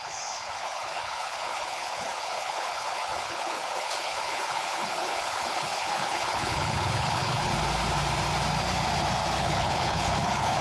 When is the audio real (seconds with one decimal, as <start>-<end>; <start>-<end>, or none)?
7.5-9.4